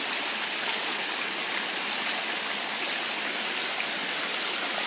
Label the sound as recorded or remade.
recorded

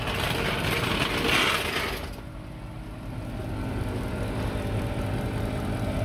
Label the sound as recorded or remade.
recorded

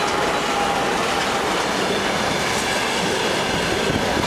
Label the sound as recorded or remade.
recorded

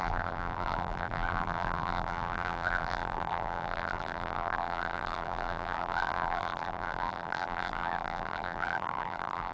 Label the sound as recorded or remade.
remade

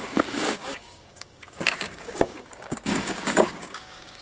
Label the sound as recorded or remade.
remade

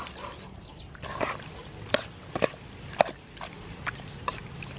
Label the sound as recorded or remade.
remade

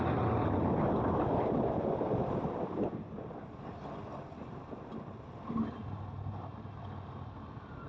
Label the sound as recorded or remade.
recorded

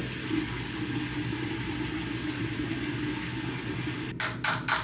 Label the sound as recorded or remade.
recorded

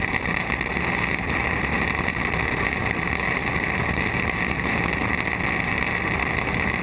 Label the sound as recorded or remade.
recorded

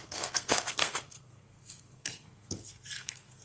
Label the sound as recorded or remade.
remade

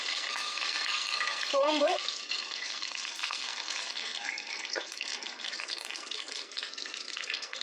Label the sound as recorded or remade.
remade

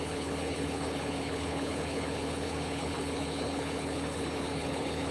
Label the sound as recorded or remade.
remade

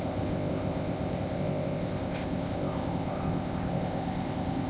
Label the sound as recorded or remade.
remade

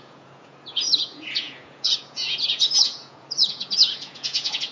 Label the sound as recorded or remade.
remade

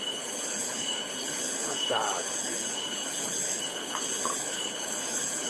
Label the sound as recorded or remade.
remade